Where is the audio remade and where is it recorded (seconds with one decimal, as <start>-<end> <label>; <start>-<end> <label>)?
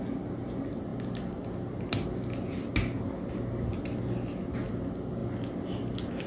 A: 0.0-6.3 recorded